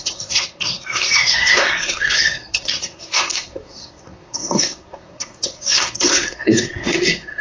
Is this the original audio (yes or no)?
no